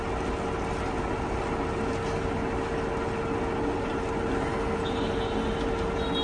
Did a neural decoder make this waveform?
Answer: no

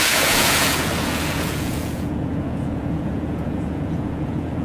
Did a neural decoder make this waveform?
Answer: yes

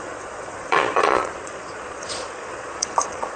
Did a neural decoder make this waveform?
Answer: yes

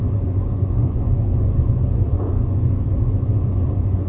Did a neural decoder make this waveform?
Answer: yes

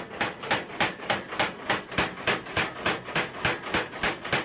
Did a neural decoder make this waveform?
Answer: no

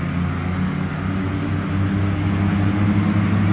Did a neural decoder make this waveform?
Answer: no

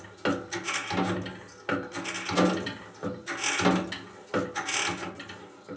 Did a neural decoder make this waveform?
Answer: no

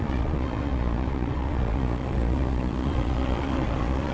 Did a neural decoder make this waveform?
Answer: yes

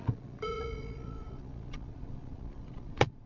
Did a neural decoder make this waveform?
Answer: yes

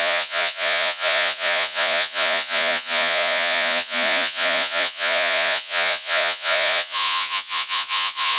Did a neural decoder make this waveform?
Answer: yes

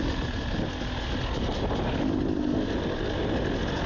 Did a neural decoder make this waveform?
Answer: no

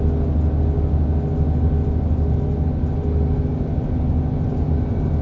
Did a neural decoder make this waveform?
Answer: no